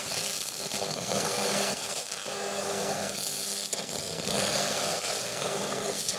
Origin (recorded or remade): remade